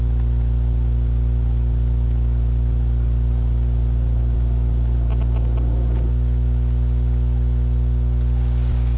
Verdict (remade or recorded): recorded